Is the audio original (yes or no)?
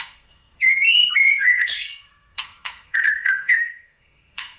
no